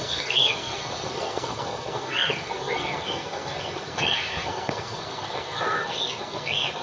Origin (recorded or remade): remade